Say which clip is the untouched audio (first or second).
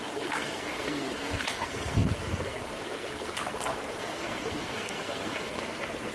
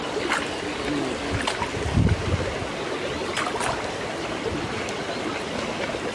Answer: second